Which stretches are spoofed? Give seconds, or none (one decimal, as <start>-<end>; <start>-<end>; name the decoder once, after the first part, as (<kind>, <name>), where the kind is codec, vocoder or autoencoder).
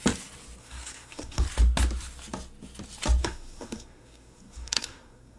0.6-1.4 (codec, SNAC); 3.2-5.4